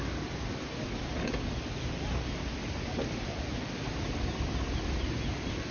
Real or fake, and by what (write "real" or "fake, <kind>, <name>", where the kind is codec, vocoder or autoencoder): real